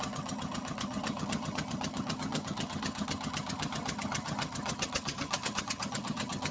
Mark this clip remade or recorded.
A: remade